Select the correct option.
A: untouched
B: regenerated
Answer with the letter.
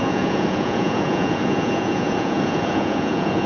B